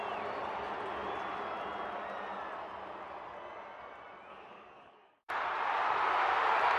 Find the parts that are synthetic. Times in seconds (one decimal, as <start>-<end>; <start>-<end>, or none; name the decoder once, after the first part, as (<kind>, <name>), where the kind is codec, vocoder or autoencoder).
4.3-5.3 (codec, DAC)